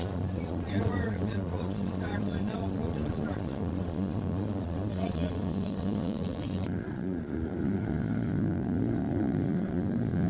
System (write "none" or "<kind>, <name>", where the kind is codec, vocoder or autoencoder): vocoder, Vocos